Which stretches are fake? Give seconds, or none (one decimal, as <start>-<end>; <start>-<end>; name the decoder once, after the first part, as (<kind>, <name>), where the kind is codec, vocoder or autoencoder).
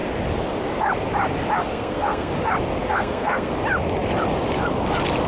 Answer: 1.7-2.3 (codec, SNAC); 2.8-3.5